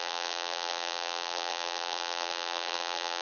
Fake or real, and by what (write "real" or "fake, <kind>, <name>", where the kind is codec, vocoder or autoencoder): fake, vocoder, BigVGAN v2